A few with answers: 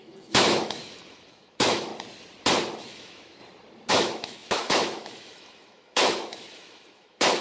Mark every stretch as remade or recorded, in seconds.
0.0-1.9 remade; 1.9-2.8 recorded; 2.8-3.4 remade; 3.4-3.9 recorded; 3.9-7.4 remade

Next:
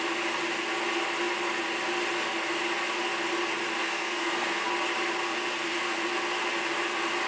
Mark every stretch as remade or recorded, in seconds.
0.0-3.8 recorded; 3.8-4.7 remade; 4.7-7.3 recorded

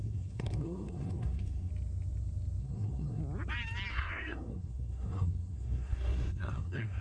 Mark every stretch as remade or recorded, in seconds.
0.0-1.7 remade; 1.7-2.6 recorded; 2.6-3.2 remade; 3.2-3.9 recorded; 3.9-7.0 remade

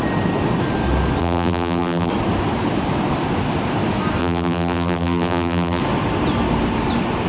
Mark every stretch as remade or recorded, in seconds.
0.0-1.2 recorded; 1.2-2.1 remade; 2.1-4.2 recorded; 4.2-5.8 remade; 5.8-7.3 recorded

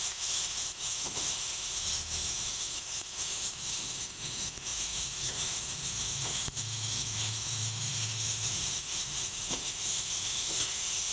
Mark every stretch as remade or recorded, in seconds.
0.0-11.1 remade